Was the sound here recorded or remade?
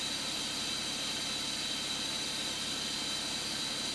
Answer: recorded